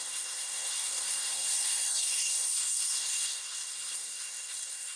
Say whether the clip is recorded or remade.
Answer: remade